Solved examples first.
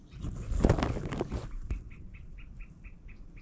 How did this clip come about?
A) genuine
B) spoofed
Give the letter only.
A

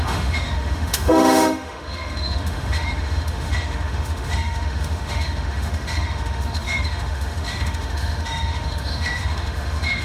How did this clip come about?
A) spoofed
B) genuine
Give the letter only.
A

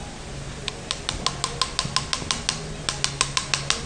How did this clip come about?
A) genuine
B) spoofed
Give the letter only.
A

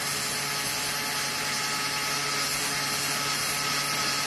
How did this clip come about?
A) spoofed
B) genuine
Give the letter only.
B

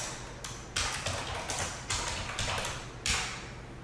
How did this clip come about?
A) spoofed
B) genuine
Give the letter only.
B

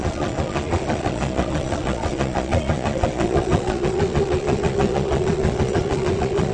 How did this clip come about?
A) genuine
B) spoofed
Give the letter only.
B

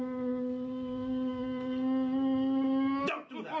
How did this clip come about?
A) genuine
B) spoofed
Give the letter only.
A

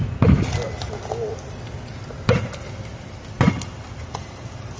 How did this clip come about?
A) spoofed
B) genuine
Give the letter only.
B